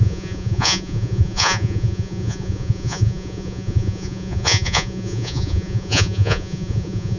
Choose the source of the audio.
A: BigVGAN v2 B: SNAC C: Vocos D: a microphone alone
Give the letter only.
C